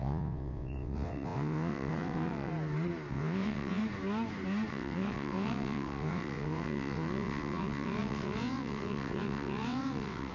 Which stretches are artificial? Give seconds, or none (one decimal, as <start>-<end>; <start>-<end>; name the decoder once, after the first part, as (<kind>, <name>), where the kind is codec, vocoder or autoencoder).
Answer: 0.0-2.5 (vocoder, WaveNeXt); 3.1-3.8; 4.7-10.3